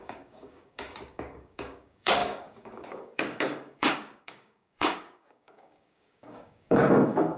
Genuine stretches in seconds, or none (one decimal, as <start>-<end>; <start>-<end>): none